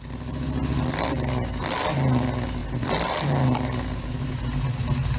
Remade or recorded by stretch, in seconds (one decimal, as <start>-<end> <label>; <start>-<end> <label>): 0.0-5.2 recorded